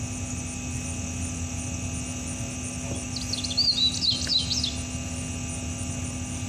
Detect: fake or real real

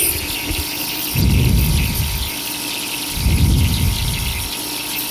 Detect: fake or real real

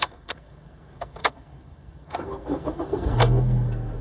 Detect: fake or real fake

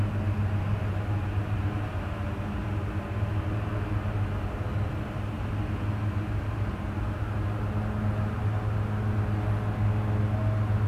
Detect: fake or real real